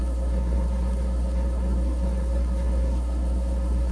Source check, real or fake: fake